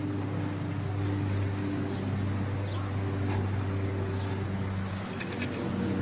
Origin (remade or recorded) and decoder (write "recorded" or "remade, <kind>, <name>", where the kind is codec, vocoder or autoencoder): recorded